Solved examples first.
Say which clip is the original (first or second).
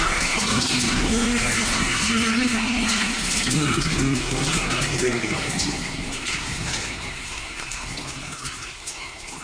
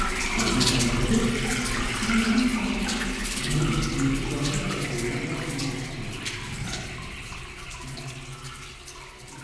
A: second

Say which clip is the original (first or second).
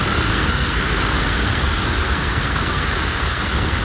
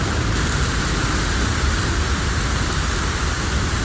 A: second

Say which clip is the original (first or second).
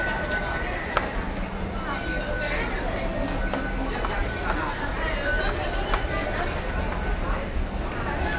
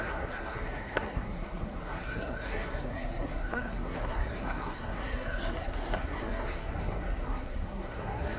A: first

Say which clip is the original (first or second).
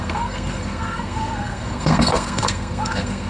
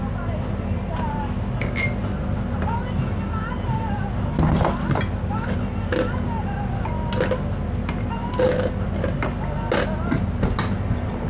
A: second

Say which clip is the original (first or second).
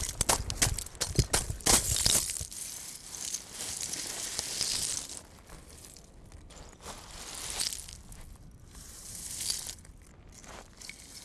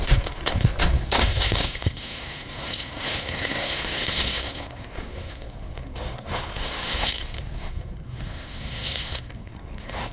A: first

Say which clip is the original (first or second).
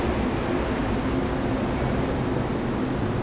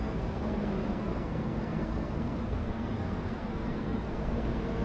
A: first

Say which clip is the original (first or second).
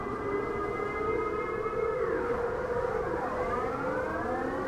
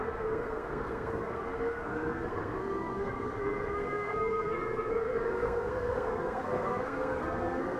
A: first